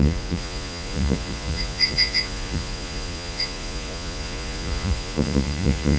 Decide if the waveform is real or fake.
fake